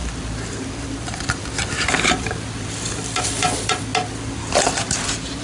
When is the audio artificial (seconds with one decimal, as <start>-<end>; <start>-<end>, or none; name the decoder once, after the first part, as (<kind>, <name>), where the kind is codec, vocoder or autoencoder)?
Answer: 0.0-3.9 (vocoder, BigVGAN v2); 4.5-5.4